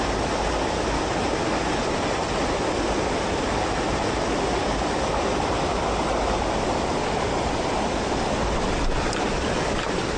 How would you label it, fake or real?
real